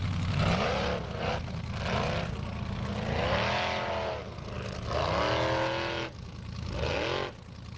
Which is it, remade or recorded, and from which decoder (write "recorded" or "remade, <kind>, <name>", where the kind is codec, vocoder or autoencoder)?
recorded